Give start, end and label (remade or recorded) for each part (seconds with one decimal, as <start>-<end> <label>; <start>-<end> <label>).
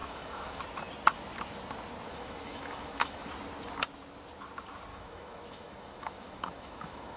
0.0-0.6 remade; 0.6-2.1 recorded; 2.1-3.3 remade; 3.3-4.9 recorded; 4.9-7.2 remade